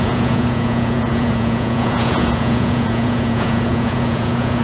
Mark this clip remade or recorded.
remade